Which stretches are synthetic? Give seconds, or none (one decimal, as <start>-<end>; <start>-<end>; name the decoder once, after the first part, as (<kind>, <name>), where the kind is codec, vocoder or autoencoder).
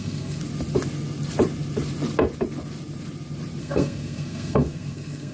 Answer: 0.0-0.4 (codec, SNAC); 3.6-5.3